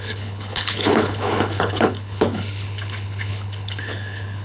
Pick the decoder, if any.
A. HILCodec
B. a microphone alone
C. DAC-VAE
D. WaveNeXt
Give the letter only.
A